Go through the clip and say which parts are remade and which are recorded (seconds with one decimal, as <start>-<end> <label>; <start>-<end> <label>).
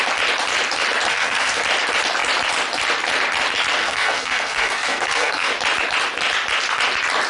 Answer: 0.0-1.1 recorded; 1.1-1.6 remade; 1.6-3.8 recorded; 3.8-5.5 remade; 5.5-7.3 recorded